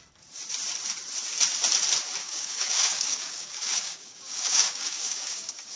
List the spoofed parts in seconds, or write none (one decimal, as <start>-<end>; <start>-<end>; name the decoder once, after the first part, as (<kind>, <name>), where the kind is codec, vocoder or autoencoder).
2.2-5.8 (codec, DAC)